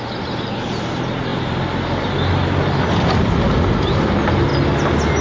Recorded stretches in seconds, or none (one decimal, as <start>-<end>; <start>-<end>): 0.0-5.2